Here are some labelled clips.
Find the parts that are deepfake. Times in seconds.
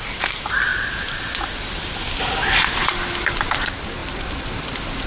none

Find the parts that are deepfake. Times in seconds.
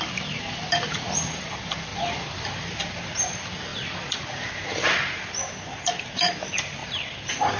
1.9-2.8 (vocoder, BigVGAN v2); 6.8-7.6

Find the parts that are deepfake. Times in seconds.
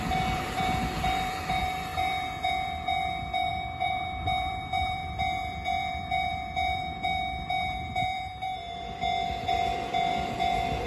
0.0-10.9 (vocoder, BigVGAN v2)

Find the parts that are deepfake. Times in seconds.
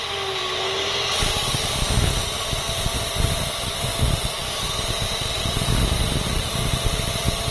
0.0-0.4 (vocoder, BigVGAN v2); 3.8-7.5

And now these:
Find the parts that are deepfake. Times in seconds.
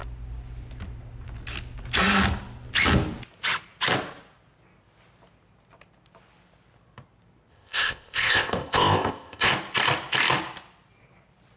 7.5-9.5 (codec, ZipCodec)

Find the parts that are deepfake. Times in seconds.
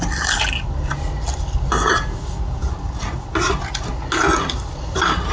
none